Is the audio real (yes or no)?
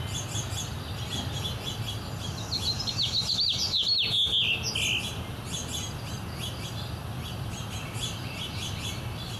yes